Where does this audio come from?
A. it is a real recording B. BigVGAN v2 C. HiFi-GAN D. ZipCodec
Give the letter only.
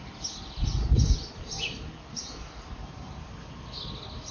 A